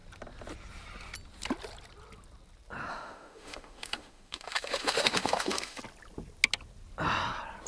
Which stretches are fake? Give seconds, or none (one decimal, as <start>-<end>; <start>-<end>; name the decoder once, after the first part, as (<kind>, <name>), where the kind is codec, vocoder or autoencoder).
2.9-5.8 (autoencoder, DAC-VAE)